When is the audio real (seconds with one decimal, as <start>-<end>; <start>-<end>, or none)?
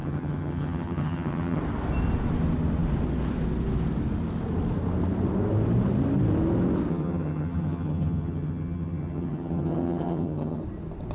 1.6-6.9; 10.6-11.1